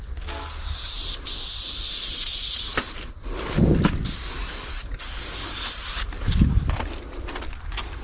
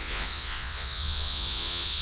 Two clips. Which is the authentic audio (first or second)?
first